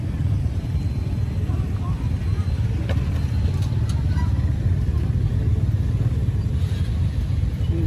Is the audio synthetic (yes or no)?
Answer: no